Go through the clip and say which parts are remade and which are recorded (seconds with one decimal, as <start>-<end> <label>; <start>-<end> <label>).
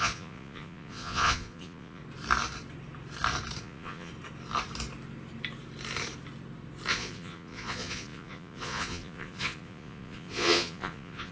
0.0-2.0 remade; 2.0-3.6 recorded; 3.6-4.1 remade; 4.1-6.9 recorded; 6.9-11.3 remade